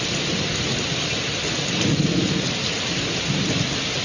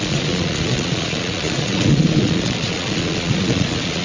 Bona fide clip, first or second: first